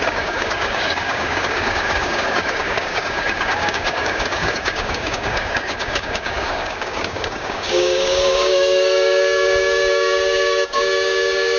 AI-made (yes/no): yes